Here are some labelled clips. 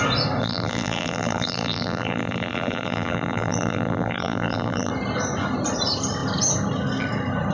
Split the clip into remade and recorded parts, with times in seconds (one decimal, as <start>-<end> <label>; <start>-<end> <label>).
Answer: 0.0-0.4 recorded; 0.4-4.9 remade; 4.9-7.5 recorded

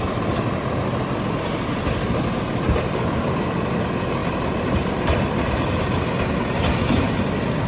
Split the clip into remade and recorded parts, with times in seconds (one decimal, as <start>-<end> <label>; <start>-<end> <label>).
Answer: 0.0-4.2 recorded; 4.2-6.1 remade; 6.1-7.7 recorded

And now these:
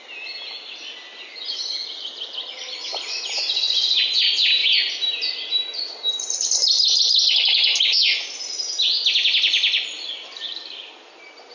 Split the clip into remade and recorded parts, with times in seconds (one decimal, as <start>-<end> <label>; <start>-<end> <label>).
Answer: 0.0-11.5 recorded

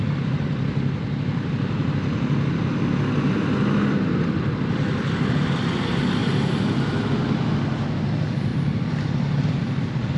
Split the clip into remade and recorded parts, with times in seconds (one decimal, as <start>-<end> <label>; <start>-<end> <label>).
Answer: 0.0-8.5 recorded; 8.5-9.1 remade; 9.1-10.2 recorded

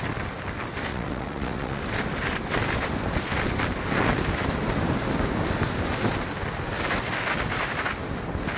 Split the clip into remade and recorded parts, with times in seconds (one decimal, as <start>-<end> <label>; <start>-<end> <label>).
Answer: 0.0-0.9 recorded; 0.9-1.8 remade; 1.8-8.6 recorded

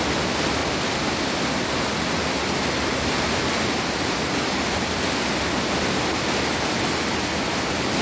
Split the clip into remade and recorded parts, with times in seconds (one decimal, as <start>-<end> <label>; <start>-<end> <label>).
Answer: 0.0-8.0 recorded

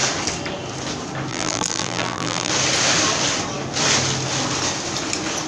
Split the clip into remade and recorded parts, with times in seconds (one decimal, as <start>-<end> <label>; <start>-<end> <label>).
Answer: 0.0-1.3 recorded; 1.3-2.5 remade; 2.5-5.5 recorded

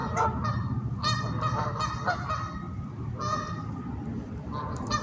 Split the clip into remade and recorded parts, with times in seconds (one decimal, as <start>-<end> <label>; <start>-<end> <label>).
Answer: 0.0-1.2 remade; 1.2-5.0 recorded